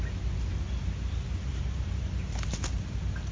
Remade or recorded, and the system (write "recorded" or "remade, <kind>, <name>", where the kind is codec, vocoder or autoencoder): recorded